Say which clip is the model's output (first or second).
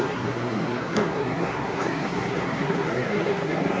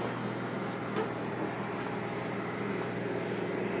first